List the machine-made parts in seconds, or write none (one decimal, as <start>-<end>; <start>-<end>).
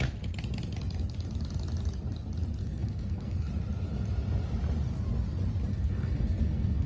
2.6-3.5; 5.7-6.9